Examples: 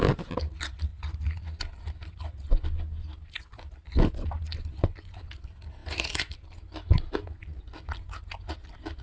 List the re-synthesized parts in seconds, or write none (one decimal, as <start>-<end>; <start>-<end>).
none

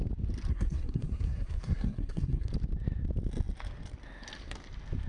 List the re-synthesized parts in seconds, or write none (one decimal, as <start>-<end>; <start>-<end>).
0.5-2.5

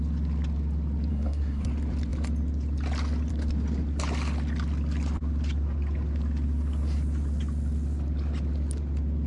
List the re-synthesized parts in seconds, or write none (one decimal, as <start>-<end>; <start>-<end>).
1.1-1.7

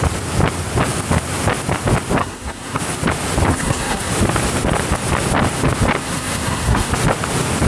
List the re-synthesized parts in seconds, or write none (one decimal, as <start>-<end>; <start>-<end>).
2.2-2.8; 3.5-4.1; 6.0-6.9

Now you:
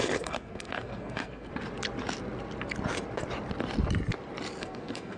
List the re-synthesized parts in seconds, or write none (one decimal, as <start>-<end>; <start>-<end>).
0.0-1.5; 4.6-5.2

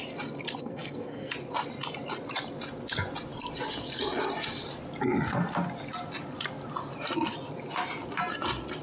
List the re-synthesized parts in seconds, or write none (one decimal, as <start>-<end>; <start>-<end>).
0.6-1.3

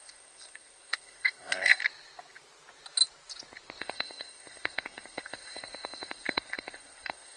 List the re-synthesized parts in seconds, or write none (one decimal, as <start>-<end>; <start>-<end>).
0.0-1.8; 3.8-7.4